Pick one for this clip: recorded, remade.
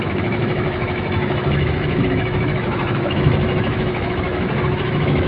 remade